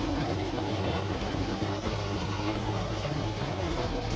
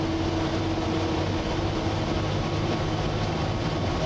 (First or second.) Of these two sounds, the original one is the second